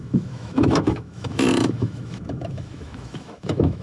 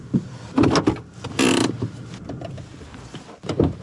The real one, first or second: second